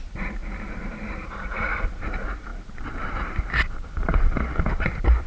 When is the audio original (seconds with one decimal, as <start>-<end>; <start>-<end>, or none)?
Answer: 0.0-0.4; 1.8-2.5; 4.6-5.3

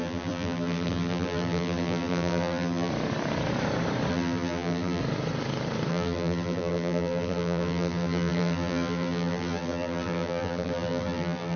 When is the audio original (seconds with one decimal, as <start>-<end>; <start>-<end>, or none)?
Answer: 2.9-4.1; 5.0-5.9

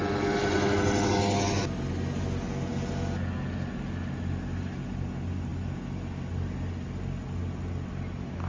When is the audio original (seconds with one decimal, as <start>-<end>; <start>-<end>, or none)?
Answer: 0.0-8.5

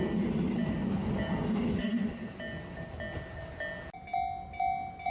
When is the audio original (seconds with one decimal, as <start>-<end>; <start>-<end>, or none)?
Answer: 0.0-5.1

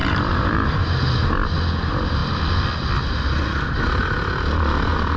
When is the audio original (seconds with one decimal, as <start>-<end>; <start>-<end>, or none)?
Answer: 0.7-5.2

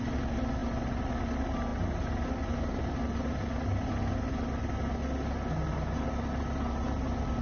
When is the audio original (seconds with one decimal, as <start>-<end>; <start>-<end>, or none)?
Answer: 0.0-0.6; 1.2-7.4

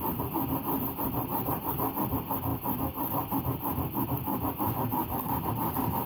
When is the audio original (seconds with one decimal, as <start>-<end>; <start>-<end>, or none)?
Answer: 0.0-1.3; 1.8-6.1